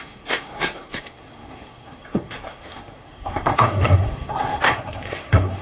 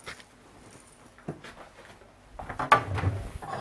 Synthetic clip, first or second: first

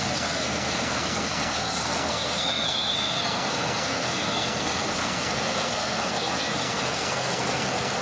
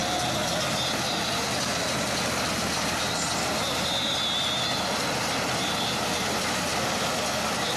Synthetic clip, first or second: first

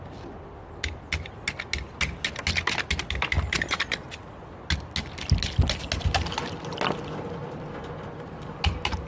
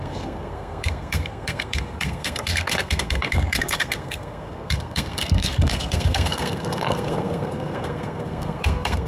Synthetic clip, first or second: second